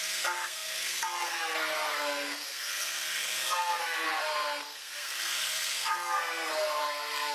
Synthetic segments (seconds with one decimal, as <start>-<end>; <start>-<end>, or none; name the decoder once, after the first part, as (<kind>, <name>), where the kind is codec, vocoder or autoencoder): 0.0-7.3 (codec, SNAC)